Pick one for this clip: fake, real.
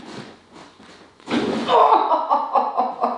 fake